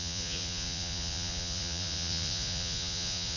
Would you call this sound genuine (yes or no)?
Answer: no